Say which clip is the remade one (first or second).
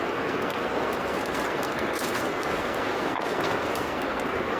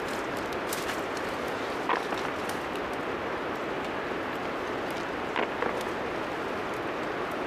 first